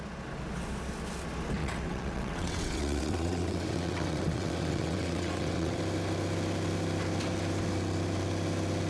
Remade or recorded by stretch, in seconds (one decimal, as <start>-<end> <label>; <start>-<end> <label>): 0.0-1.6 recorded; 1.6-5.8 remade; 5.8-8.9 recorded